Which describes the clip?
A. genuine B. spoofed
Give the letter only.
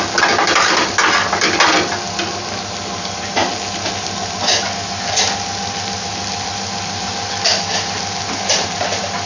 A